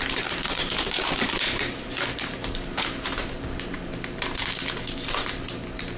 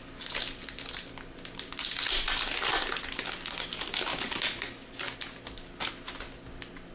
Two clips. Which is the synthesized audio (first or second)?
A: first